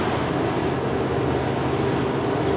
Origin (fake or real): real